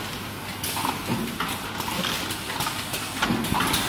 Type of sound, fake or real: real